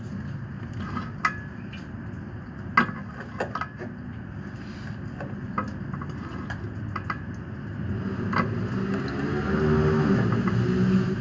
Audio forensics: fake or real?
real